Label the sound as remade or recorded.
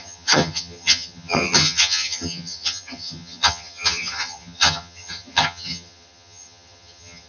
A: remade